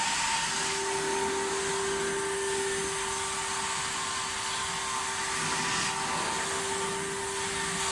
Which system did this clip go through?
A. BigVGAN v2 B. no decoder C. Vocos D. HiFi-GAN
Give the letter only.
B